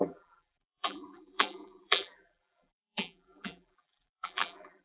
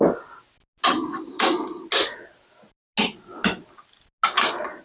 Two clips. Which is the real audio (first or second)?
second